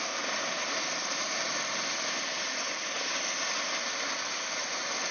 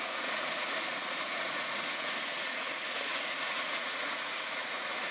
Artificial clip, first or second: second